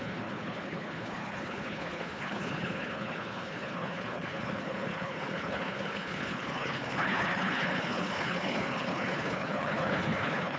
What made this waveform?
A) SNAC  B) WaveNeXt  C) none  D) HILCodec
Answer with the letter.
D